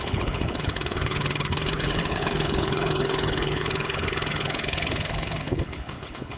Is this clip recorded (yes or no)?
no